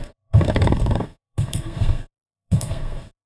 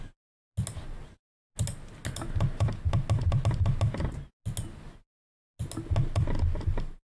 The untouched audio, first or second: second